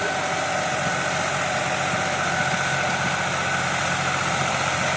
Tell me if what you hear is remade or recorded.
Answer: recorded